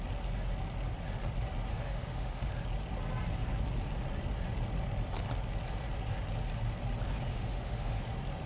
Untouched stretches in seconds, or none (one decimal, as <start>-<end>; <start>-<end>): 0.0-1.7; 2.5-7.3; 8.0-8.5